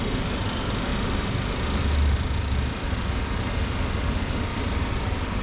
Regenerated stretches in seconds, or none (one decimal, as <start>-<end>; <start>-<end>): 4.5-5.4